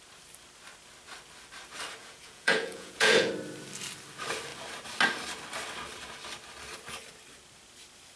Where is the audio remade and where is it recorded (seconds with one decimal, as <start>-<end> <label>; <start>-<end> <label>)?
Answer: 0.0-2.0 recorded; 2.0-3.3 remade; 3.3-8.2 recorded